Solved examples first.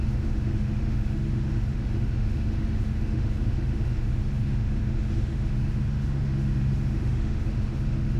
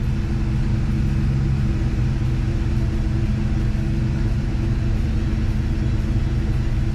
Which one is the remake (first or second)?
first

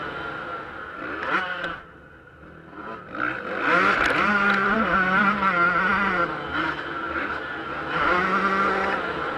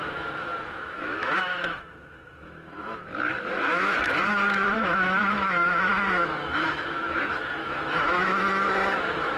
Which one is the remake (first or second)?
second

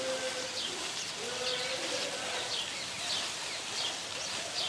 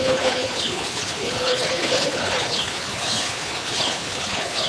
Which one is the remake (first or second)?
second